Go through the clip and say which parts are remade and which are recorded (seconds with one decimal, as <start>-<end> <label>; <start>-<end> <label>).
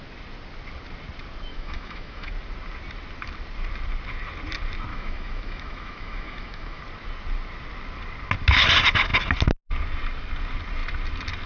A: 0.0-1.5 recorded; 1.5-2.3 remade; 2.3-4.9 recorded; 4.9-6.8 remade; 6.8-11.5 recorded